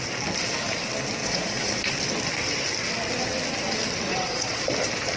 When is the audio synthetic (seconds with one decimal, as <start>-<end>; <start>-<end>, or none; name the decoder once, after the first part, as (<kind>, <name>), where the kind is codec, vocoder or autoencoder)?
1.2-1.9 (vocoder, Vocos); 4.1-4.7